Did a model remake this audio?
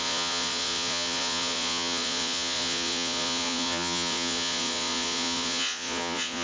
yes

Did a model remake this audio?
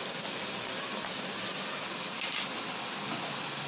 no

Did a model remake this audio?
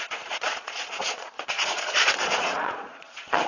yes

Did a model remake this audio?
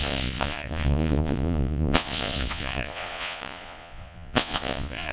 yes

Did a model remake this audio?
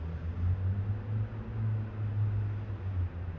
no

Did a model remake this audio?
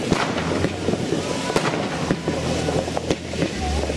no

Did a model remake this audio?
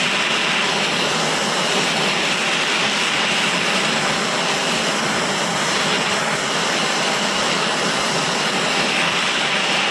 no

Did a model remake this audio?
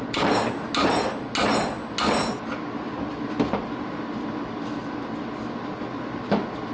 no